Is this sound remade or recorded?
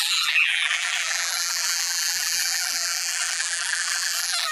remade